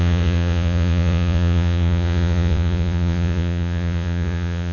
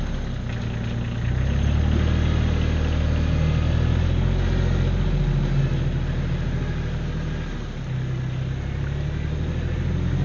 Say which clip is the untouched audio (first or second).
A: second